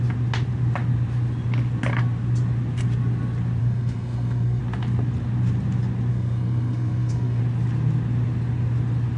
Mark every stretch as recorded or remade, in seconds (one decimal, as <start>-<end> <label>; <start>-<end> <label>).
0.0-3.6 recorded; 3.6-4.6 remade; 4.6-6.1 recorded; 6.1-7.4 remade; 7.4-9.2 recorded

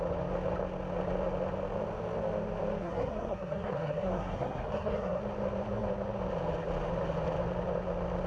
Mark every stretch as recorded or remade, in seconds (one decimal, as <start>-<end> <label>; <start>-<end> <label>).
0.0-2.8 recorded; 2.8-5.2 remade; 5.2-8.3 recorded

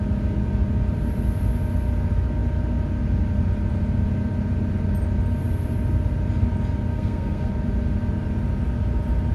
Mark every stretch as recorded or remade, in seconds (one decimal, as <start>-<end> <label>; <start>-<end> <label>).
0.0-6.9 recorded; 6.9-7.5 remade; 7.5-9.3 recorded

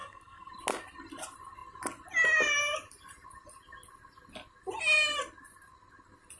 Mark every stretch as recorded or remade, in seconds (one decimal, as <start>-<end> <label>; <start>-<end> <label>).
0.0-0.5 remade; 0.5-6.4 recorded

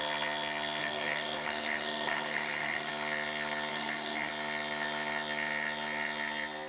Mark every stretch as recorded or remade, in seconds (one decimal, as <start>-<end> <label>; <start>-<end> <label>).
0.0-0.8 recorded; 0.8-2.9 remade; 2.9-3.7 recorded; 3.7-4.3 remade; 4.3-6.7 recorded

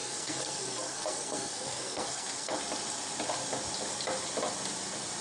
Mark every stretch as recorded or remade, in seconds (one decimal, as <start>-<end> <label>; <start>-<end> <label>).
0.0-2.6 remade; 2.6-5.2 recorded

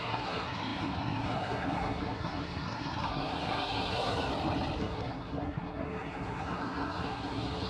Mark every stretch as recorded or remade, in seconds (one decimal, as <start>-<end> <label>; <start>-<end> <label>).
0.0-4.3 remade; 4.3-4.8 recorded; 4.8-7.7 remade